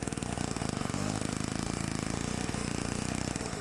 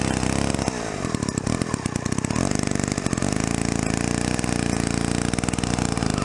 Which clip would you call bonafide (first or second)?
second